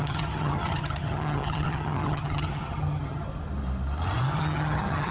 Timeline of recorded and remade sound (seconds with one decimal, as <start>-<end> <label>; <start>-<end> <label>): 0.0-3.3 remade; 3.3-4.4 recorded; 4.4-5.1 remade